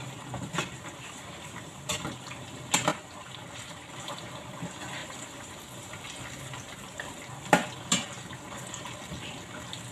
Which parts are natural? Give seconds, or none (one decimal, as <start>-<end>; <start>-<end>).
0.0-2.9; 3.9-5.0; 5.8-9.9